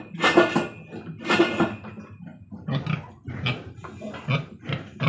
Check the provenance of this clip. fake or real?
real